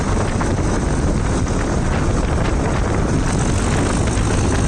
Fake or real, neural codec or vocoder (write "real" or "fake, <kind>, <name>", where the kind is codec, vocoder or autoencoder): real